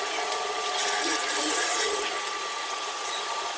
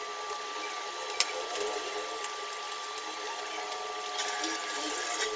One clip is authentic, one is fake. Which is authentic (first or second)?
second